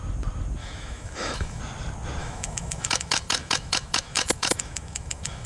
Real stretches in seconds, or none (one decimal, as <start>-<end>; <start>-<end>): 0.0-0.6; 1.6-2.2